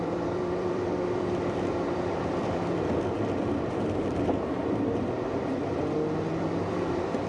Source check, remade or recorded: remade